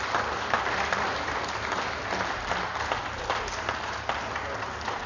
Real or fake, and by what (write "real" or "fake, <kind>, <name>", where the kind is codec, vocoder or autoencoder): real